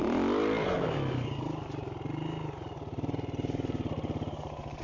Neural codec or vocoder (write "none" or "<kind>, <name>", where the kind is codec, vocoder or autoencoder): none